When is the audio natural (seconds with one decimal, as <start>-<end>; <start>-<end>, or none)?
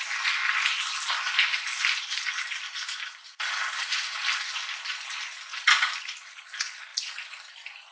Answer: 0.4-3.8; 5.5-6.4